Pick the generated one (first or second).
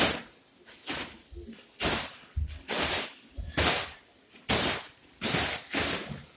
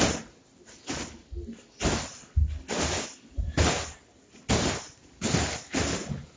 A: first